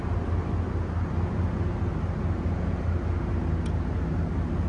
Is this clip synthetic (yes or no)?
no